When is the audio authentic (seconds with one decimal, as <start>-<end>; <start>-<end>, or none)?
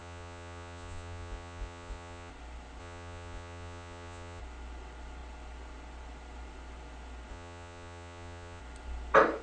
2.3-2.8; 4.4-7.3; 8.6-9.4